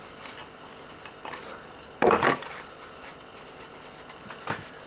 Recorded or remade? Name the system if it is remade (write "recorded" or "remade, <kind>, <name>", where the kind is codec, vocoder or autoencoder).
recorded